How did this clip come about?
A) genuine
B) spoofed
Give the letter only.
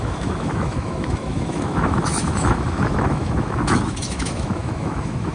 B